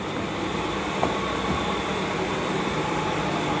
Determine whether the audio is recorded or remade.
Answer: recorded